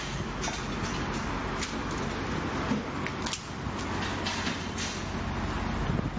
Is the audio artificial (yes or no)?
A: no